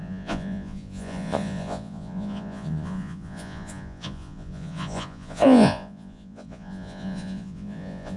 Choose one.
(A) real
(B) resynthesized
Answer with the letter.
B